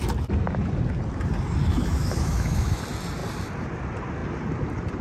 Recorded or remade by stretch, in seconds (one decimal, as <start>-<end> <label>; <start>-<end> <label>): 0.0-1.7 recorded; 1.7-2.8 remade; 2.8-5.0 recorded